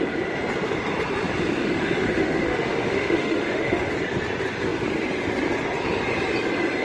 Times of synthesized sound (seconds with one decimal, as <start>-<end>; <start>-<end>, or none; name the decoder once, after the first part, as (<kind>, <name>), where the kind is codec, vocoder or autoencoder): 1.6-3.9 (autoencoder, DAC-VAE)